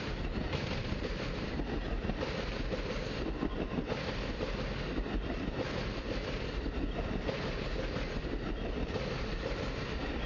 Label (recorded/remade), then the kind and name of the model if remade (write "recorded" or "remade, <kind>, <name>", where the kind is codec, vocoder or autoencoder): remade, vocoder, BigVGAN v2